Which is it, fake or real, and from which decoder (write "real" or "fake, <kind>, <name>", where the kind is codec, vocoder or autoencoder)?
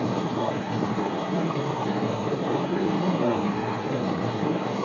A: fake, codec, SNAC